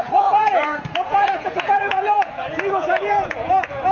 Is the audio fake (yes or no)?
yes